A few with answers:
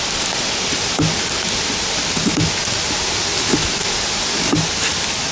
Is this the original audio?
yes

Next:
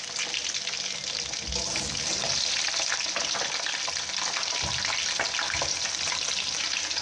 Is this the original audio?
yes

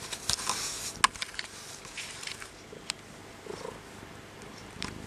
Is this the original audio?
yes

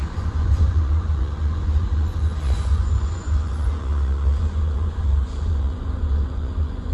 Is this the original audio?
no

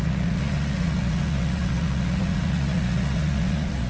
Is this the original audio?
no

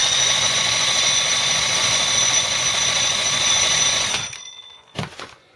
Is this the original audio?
no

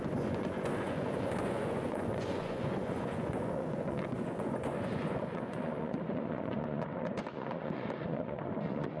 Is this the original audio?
no